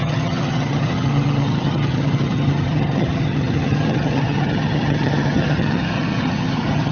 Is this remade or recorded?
remade